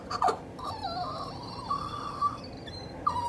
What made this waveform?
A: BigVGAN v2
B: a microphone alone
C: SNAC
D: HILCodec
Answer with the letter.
B